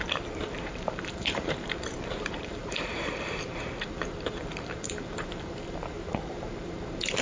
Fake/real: fake